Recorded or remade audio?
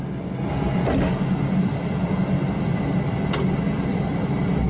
recorded